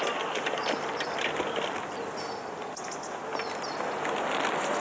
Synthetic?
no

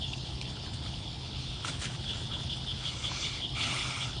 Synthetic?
yes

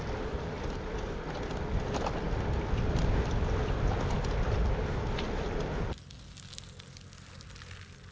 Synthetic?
no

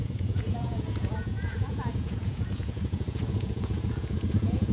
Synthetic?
yes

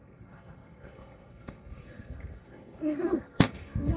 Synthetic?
yes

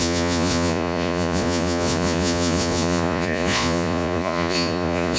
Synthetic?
yes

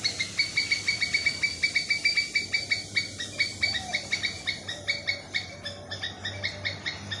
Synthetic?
no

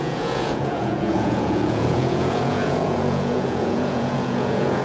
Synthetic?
yes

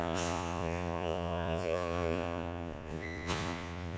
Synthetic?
yes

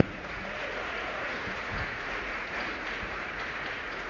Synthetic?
yes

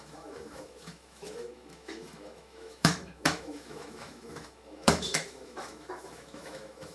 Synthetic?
yes